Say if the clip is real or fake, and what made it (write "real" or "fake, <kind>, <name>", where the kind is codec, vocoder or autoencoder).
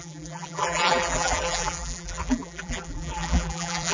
fake, vocoder, BigVGAN v2